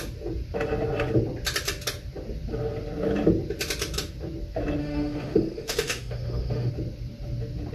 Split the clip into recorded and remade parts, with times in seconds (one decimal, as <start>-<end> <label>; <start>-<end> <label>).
0.0-4.8 recorded; 4.8-6.7 remade; 6.7-7.7 recorded